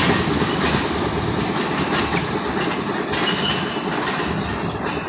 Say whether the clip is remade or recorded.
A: recorded